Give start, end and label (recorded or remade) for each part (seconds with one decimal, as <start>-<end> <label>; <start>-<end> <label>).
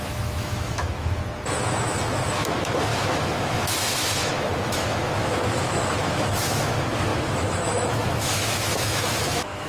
0.0-1.2 remade; 1.2-2.5 recorded; 2.5-9.7 remade